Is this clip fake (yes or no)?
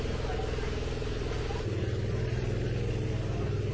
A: no